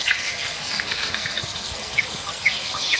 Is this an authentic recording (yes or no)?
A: no